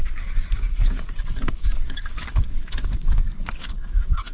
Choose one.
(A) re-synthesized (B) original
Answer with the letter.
A